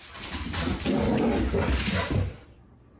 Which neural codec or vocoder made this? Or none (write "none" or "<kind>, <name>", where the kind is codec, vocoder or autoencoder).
none